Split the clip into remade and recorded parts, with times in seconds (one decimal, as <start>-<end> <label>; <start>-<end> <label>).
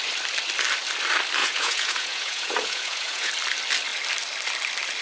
0.0-1.4 recorded; 1.4-3.3 remade; 3.3-5.0 recorded